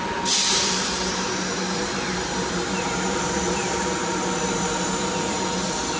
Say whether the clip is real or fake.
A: fake